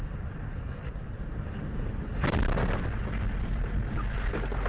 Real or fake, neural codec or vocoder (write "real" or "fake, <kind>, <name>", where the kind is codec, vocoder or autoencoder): real